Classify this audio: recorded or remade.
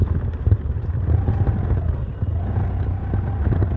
recorded